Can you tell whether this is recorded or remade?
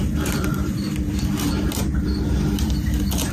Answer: remade